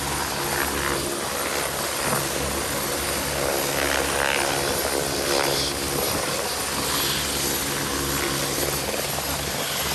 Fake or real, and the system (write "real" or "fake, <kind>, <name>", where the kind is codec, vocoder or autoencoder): real